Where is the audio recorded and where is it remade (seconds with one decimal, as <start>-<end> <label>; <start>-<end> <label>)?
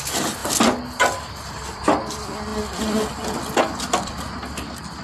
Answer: 0.0-5.0 recorded